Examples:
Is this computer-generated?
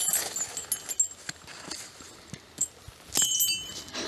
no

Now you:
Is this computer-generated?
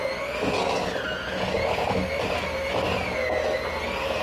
no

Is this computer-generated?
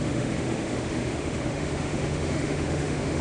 yes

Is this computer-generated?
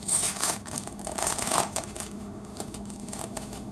yes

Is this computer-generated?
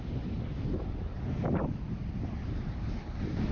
no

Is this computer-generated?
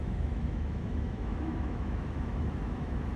yes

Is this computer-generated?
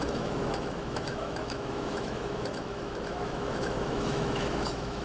yes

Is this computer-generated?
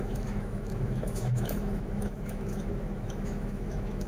yes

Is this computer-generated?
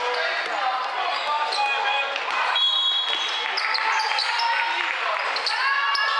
no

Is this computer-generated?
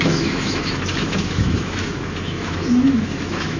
yes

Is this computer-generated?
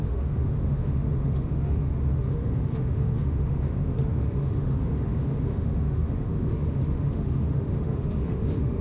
yes